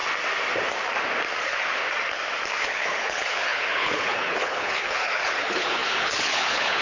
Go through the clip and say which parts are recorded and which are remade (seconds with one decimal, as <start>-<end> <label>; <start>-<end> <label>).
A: 0.0-1.4 recorded; 1.4-1.8 remade; 1.8-2.6 recorded; 2.6-6.8 remade